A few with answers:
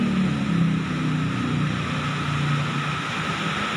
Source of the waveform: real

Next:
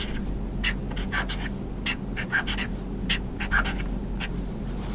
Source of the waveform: real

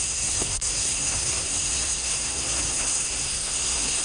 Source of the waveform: fake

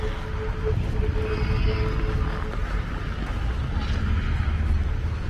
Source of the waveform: real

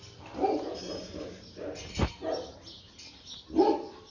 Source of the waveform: real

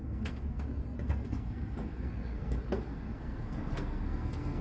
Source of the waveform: fake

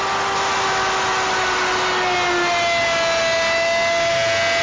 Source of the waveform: real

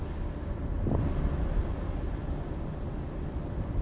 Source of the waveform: real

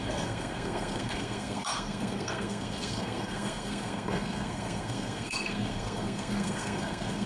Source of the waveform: fake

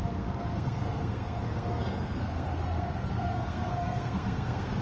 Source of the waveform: fake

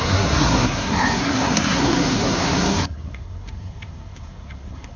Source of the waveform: fake